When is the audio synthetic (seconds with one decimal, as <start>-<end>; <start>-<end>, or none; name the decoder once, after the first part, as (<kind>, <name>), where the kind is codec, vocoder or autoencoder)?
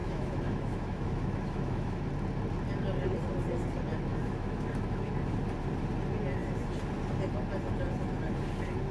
0.0-2.1 (autoencoder, DAC-VAE); 4.1-5.1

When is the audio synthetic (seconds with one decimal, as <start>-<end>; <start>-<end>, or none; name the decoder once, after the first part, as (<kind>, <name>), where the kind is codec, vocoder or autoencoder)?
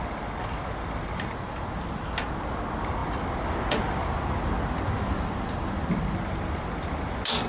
none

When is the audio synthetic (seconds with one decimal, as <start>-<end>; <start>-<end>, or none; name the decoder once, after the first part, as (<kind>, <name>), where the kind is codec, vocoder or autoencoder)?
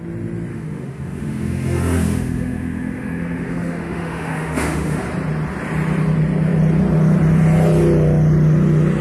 0.5-5.0 (autoencoder, DAC-VAE)